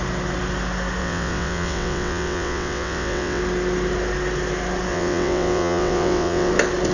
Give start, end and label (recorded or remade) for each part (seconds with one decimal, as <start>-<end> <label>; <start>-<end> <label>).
0.0-1.0 recorded; 1.0-3.4 remade; 3.4-4.9 recorded; 4.9-6.5 remade; 6.5-6.9 recorded